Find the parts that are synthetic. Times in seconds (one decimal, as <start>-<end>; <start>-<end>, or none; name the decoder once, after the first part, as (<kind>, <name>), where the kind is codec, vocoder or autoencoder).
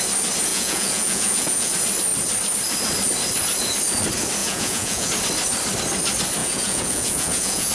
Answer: 0.5-1.7 (vocoder, Vocos); 4.4-5.1; 6.4-7.7